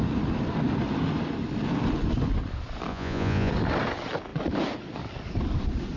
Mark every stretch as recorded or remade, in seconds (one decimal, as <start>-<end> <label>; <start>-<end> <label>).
0.0-2.9 recorded; 2.9-3.5 remade; 3.5-6.0 recorded